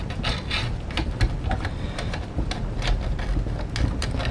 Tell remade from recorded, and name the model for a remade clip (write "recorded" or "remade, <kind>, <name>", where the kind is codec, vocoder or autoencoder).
recorded